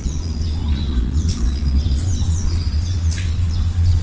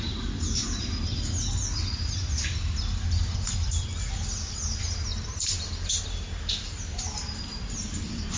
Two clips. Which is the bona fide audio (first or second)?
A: second